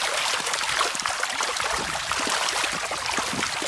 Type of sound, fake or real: real